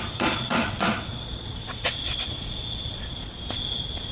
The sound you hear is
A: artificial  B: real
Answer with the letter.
A